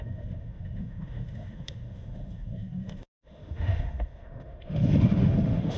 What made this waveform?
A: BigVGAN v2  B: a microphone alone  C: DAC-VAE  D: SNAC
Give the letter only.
C